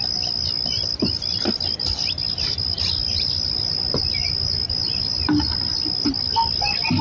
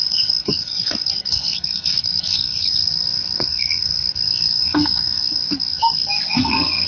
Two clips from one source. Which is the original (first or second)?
first